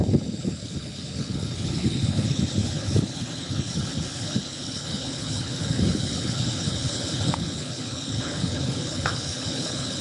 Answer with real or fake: fake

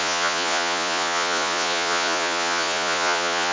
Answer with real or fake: fake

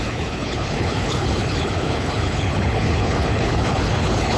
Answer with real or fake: fake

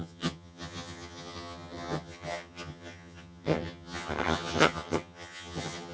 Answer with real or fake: fake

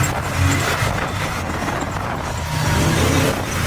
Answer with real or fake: real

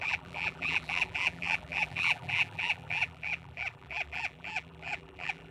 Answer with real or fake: fake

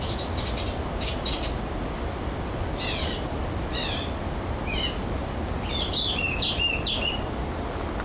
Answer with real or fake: real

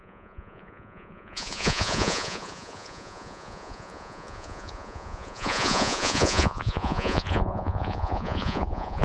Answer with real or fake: fake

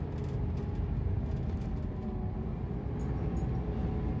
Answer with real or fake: real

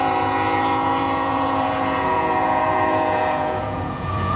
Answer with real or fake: fake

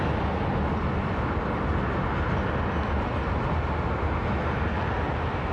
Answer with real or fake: real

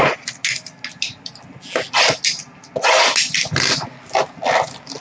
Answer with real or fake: real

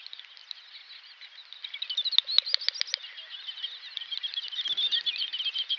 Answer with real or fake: real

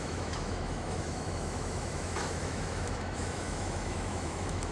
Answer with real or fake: fake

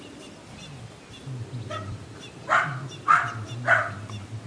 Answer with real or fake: real